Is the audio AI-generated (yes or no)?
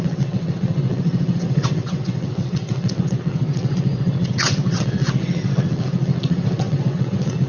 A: yes